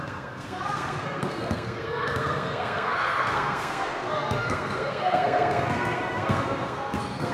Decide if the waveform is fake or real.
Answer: fake